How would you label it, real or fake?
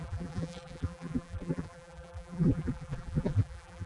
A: fake